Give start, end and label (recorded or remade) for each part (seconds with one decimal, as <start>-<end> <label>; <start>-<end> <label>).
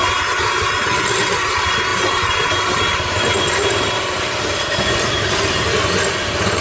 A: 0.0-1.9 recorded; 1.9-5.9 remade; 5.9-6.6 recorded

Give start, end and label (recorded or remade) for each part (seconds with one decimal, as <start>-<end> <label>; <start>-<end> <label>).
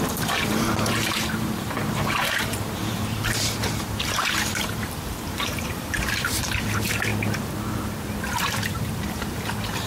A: 0.0-7.1 remade; 7.1-8.7 recorded; 8.7-9.9 remade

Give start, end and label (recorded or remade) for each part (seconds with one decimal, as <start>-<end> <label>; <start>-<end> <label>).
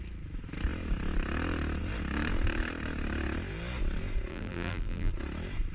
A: 0.0-4.3 recorded; 4.3-5.1 remade; 5.1-5.7 recorded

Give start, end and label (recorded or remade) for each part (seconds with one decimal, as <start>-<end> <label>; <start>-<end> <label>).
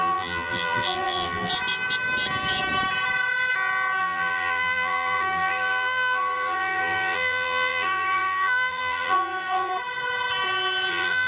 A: 0.0-1.5 remade; 1.5-4.0 recorded; 4.0-9.7 remade; 9.7-10.9 recorded; 10.9-11.3 remade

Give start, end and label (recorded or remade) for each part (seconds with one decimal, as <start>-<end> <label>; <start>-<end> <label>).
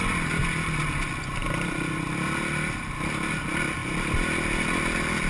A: 0.0-5.3 recorded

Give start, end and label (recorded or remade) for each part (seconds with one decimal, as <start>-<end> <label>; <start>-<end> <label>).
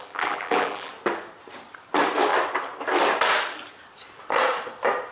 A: 0.0-0.9 remade; 0.9-5.1 recorded